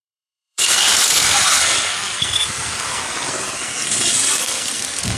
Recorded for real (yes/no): no